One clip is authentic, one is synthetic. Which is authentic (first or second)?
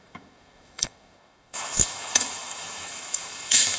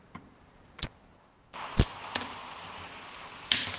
second